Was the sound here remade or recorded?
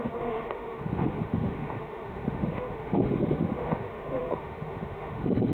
remade